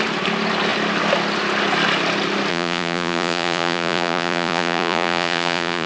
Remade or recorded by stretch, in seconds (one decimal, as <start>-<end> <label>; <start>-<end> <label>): 0.0-2.5 recorded; 2.5-5.9 remade

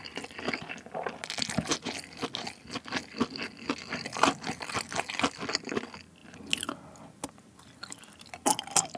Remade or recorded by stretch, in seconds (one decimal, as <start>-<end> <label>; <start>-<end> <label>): 0.0-9.0 recorded

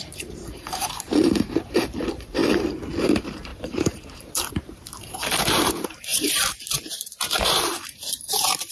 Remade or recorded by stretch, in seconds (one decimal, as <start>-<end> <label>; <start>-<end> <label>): 0.0-2.4 remade; 2.4-3.0 recorded; 3.0-8.7 remade

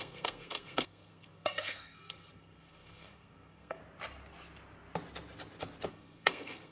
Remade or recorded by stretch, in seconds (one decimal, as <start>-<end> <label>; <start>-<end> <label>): 0.0-3.8 remade; 3.8-5.9 recorded; 5.9-6.7 remade

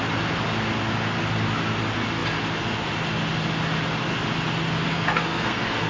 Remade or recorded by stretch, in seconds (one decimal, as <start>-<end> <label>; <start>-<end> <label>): 0.0-4.9 recorded; 4.9-5.9 remade

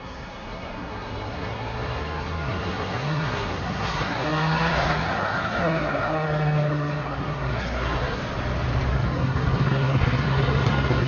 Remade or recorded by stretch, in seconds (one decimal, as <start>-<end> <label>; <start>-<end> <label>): 0.0-8.2 remade; 8.2-8.9 recorded; 8.9-11.1 remade

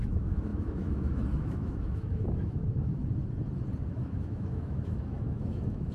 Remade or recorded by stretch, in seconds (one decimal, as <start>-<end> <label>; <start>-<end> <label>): 0.0-3.0 remade; 3.0-3.9 recorded; 3.9-5.9 remade